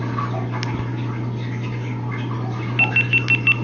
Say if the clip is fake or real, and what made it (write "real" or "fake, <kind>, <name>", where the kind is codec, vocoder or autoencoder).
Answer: real